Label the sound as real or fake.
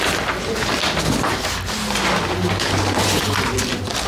real